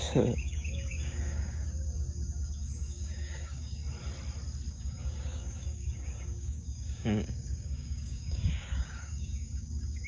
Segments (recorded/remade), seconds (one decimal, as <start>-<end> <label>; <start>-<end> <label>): 0.0-3.8 remade; 3.8-4.7 recorded; 4.7-10.1 remade